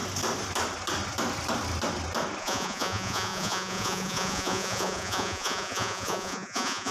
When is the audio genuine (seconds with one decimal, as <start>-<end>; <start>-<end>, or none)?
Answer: 0.0-2.4